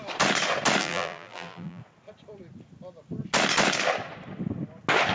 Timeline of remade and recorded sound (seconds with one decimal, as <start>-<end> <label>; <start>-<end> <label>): 0.0-0.8 recorded; 0.8-1.8 remade; 1.8-5.1 recorded